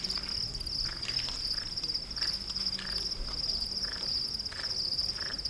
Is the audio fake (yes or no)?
no